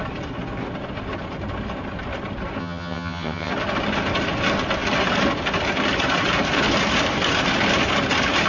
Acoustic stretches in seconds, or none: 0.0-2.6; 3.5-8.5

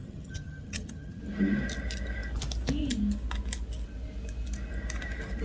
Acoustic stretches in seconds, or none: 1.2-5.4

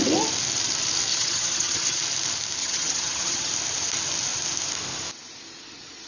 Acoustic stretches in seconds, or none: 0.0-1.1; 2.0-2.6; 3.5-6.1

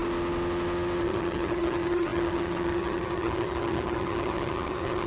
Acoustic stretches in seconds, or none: 0.0-1.0

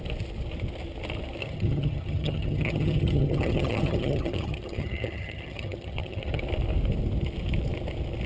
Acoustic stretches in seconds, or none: 0.0-1.4; 6.4-8.3

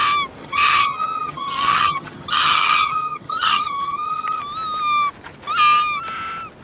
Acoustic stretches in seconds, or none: 0.0-0.4; 4.4-6.6

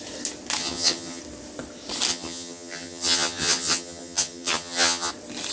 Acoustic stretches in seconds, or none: 0.0-0.6; 1.2-2.1; 5.1-5.5